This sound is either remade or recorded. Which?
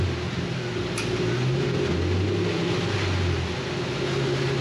recorded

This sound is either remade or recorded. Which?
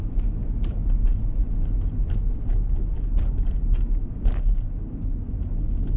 recorded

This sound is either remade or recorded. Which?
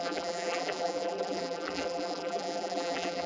remade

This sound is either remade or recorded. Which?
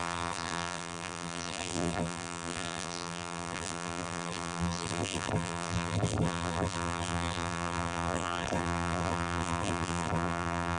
remade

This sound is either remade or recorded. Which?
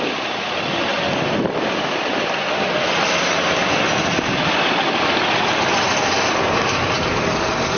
recorded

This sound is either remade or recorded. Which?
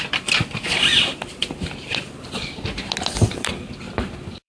remade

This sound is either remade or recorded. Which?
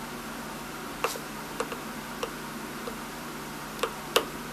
remade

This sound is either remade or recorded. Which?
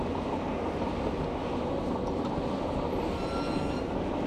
recorded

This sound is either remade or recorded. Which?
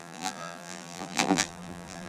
remade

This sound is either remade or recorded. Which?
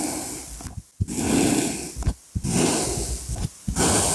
recorded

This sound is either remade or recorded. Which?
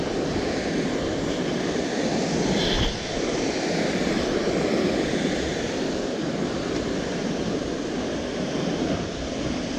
remade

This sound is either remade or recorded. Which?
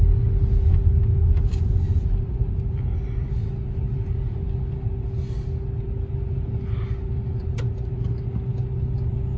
recorded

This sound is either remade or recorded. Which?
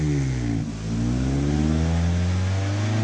recorded